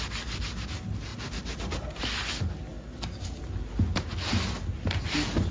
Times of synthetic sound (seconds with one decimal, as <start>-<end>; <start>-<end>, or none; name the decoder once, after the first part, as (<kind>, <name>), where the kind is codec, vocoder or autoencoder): none